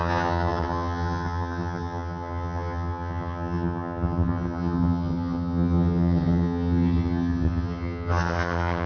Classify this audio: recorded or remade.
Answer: remade